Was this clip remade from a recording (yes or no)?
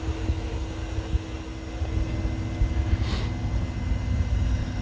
no